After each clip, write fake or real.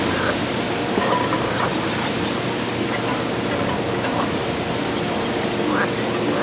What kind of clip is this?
real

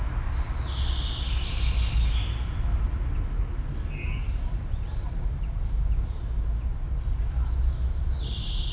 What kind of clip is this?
real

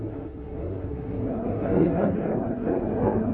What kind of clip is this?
fake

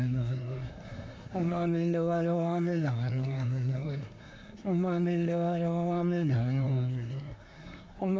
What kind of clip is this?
fake